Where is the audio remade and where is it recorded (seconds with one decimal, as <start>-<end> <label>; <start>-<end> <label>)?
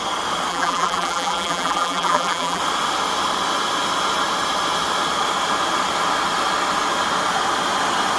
0.0-0.5 recorded; 0.5-2.6 remade; 2.6-8.2 recorded